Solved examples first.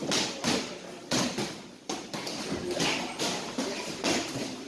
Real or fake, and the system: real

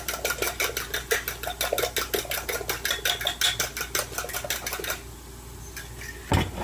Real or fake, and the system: real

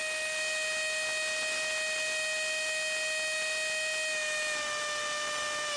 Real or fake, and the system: real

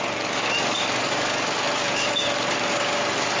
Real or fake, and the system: fake, codec, DAC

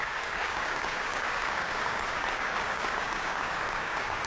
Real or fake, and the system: fake, codec, DAC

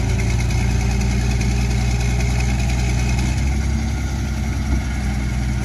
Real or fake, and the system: real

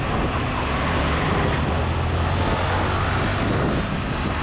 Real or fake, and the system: real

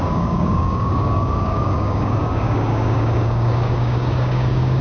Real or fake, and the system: fake, codec, DAC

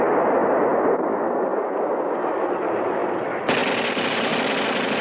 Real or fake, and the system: real